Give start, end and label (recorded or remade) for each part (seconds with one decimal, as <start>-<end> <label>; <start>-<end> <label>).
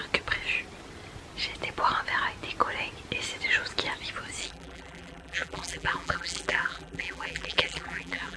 0.0-4.4 recorded; 4.4-8.4 remade